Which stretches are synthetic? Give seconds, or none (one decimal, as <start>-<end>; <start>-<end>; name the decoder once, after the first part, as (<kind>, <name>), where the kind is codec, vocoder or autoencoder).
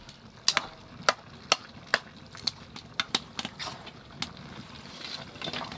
none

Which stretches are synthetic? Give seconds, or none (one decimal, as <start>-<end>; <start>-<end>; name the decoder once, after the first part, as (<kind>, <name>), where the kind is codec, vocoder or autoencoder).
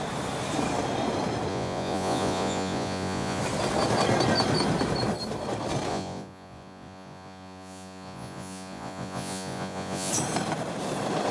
1.5-3.4 (vocoder, Vocos); 5.9-10.1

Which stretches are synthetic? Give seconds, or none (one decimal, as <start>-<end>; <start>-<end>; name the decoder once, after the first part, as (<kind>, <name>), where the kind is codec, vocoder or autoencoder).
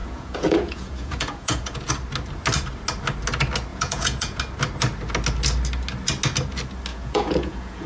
0.0-1.9 (vocoder, Vocos); 3.7-4.4; 6.9-7.9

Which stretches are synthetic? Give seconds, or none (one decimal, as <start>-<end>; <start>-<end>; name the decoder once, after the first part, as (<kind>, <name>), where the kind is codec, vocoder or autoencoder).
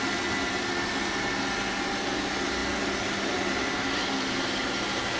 none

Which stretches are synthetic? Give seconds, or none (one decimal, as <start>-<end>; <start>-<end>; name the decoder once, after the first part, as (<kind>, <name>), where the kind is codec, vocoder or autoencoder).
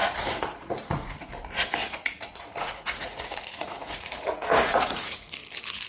0.0-1.3 (vocoder, Vocos); 1.8-5.3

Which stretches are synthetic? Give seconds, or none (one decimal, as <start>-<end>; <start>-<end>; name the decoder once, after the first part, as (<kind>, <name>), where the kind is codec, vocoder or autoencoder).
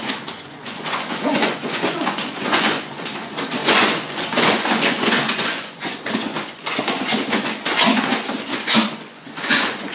0.0-9.9 (vocoder, Vocos)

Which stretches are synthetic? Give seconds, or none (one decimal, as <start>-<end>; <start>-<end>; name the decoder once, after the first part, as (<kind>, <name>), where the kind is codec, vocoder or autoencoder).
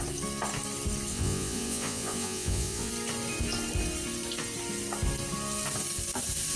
1.1-2.9 (vocoder, Vocos)